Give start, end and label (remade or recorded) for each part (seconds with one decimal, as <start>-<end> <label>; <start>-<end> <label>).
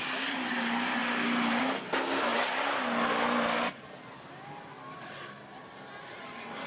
0.0-6.7 recorded